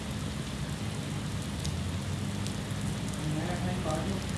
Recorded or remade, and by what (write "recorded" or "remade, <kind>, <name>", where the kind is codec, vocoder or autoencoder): recorded